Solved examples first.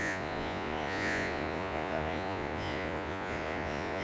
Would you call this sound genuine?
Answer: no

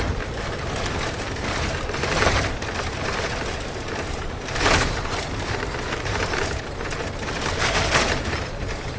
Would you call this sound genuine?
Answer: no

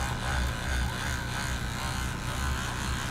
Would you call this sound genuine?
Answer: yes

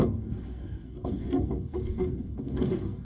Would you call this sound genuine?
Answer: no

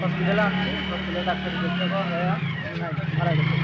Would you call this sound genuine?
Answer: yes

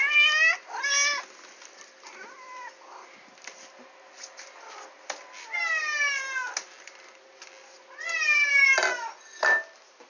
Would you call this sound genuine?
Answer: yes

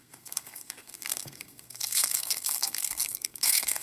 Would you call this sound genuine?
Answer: no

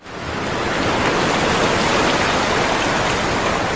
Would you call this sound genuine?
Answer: yes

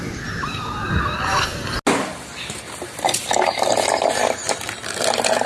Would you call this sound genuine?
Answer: yes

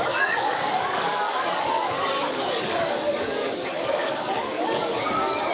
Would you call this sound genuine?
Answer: no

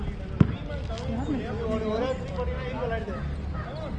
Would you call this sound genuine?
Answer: yes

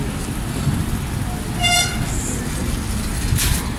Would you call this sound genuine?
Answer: yes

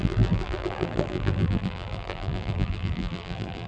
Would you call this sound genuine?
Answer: no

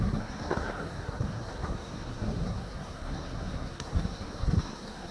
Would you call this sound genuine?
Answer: no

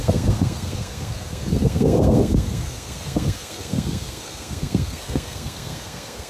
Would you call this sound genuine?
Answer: no